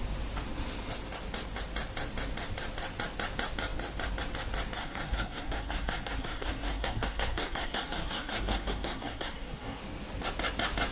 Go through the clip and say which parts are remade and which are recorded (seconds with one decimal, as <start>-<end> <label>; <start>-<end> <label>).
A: 0.0-4.8 recorded; 4.8-9.8 remade; 9.8-10.9 recorded